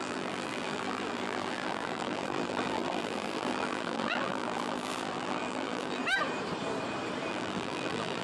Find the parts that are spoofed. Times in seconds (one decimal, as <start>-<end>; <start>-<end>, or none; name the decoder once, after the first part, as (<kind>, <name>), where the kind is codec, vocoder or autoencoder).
0.0-6.0 (vocoder, BigVGAN v2); 7.3-8.2